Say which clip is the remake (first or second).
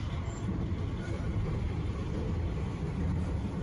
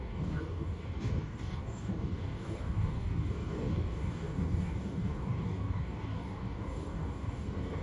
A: second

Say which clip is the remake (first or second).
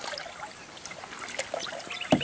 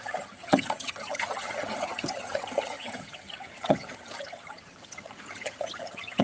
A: second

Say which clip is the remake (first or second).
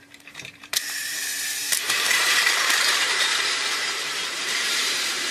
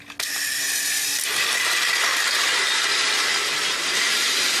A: first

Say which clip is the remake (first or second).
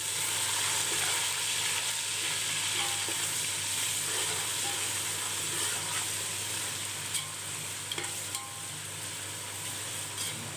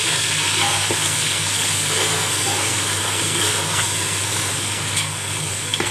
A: second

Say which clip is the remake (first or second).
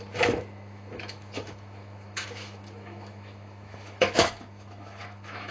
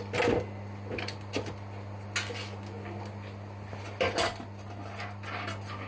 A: first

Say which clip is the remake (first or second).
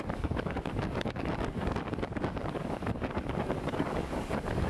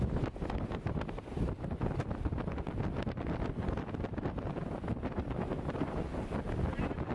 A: first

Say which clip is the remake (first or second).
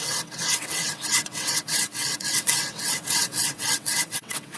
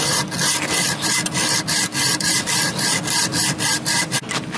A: first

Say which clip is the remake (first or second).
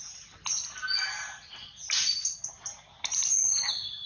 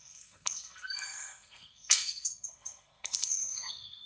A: second